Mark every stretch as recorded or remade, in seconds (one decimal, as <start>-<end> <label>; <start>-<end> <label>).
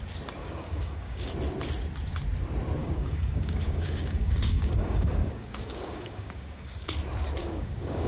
0.0-0.4 recorded; 0.4-1.3 remade; 1.3-2.8 recorded; 2.8-6.9 remade; 6.9-7.4 recorded; 7.4-8.1 remade